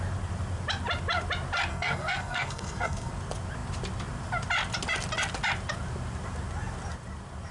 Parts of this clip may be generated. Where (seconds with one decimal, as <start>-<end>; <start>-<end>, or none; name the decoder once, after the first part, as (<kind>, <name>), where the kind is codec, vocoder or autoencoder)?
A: 1.7-3.1 (codec, SNAC)